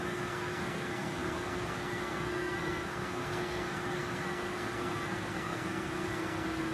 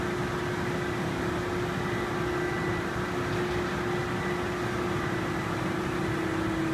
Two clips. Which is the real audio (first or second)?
second